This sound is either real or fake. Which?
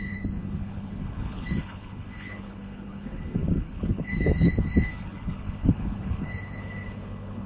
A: fake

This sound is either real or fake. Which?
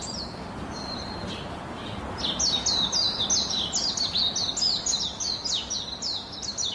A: real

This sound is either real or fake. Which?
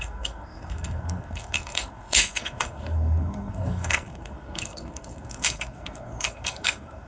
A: fake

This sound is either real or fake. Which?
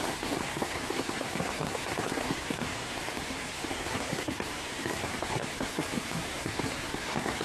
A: fake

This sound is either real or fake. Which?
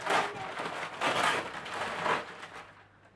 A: real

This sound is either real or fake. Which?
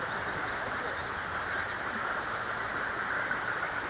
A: real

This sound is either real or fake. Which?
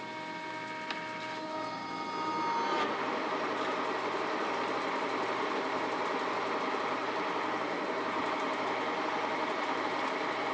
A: real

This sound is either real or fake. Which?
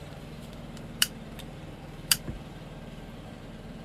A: fake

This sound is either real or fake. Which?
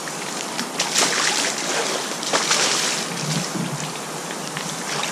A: real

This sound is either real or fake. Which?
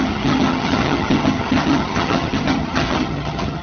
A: fake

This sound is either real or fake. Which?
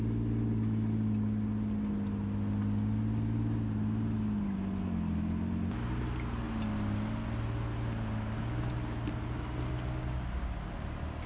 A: real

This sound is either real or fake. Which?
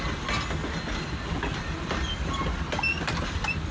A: real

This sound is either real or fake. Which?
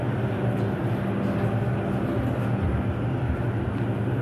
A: real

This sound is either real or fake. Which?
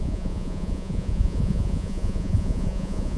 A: fake